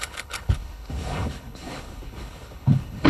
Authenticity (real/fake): fake